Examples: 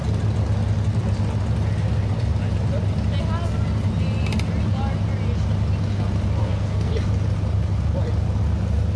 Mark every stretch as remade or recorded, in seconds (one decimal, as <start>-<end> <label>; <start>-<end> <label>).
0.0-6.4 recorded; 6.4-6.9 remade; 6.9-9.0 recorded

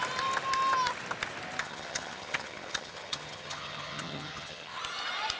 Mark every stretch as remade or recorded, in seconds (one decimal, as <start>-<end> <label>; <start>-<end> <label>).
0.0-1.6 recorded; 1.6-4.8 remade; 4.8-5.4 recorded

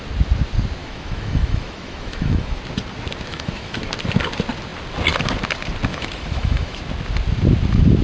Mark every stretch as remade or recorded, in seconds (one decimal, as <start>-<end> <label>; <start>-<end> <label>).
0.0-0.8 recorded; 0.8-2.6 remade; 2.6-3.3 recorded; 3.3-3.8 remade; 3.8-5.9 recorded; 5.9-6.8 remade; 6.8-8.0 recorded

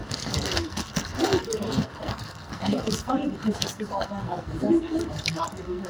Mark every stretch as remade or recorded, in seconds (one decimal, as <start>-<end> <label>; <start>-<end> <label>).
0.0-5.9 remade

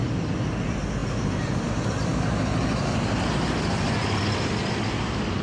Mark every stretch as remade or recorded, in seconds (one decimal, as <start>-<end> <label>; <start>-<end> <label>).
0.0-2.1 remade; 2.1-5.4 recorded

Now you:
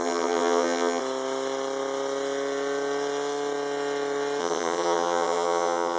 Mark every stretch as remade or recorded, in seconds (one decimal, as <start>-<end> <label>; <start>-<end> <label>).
0.0-1.0 remade; 1.0-4.4 recorded; 4.4-6.0 remade

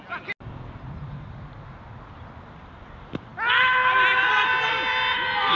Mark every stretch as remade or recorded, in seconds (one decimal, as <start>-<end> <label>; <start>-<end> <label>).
0.0-5.6 recorded